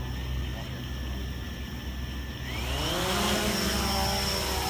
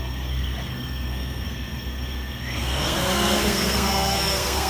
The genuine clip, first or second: first